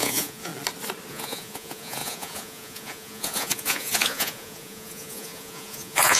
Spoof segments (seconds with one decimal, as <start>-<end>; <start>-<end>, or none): 0.0-0.5; 1.1-6.2